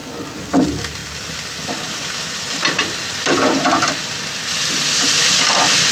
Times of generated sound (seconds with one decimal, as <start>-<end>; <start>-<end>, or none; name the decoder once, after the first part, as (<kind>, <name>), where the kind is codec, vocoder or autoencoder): 0.6-1.0 (vocoder, BigVGAN v2); 4.3-5.9